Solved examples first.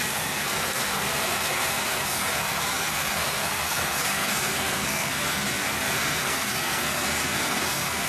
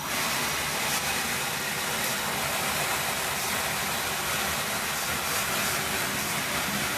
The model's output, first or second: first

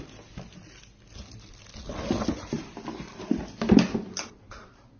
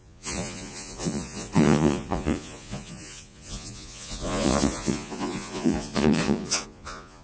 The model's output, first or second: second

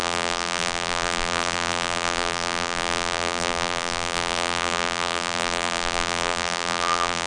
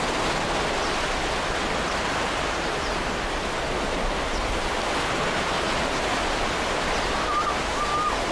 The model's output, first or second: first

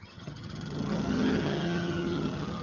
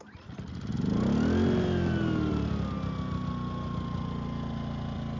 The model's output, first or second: first